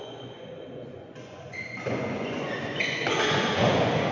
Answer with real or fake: fake